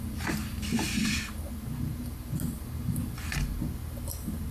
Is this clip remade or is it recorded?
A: recorded